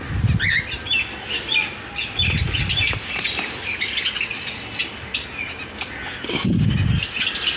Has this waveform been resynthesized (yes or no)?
no